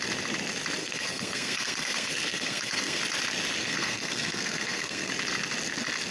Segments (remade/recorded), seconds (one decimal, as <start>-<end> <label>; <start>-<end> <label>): 0.0-0.8 recorded; 0.8-3.0 remade; 3.0-3.6 recorded; 3.6-5.1 remade; 5.1-6.1 recorded